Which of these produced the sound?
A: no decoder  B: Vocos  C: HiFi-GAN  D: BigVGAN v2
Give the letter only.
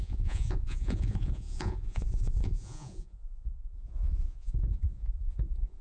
B